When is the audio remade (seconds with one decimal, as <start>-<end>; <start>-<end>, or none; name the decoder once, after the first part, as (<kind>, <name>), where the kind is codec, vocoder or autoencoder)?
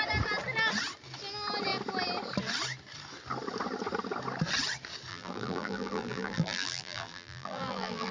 5.1-8.1 (vocoder, BigVGAN v2)